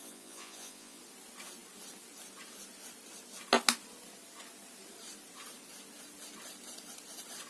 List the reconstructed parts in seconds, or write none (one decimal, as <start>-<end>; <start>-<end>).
0.0-1.0

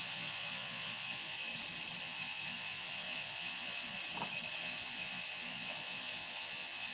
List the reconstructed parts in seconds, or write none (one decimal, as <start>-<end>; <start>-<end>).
0.0-1.5; 2.0-4.0; 4.6-6.9

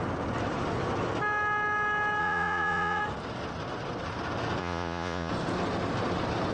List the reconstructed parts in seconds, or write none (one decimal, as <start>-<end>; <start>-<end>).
2.2-3.0; 4.6-5.3

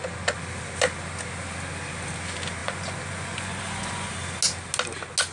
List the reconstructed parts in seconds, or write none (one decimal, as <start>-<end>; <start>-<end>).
2.6-4.1